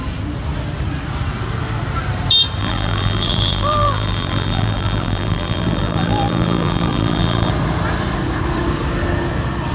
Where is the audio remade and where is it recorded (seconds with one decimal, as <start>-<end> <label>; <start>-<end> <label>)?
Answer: 0.0-2.6 recorded; 2.6-7.5 remade; 7.5-9.7 recorded